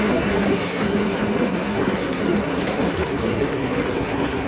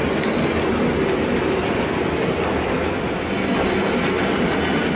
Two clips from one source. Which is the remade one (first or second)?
first